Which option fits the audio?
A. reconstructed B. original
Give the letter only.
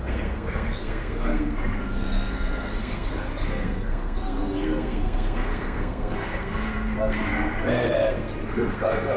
A